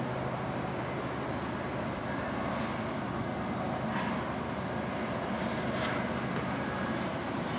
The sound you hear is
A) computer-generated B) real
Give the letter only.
B